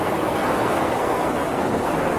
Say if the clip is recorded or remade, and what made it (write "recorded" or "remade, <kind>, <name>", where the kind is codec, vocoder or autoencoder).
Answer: remade, codec, SNAC